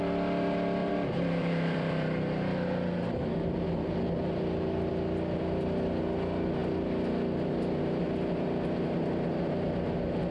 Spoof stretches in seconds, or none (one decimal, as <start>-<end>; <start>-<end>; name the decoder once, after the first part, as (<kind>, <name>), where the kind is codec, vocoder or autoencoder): 0.8-4.9 (vocoder, BigVGAN v2)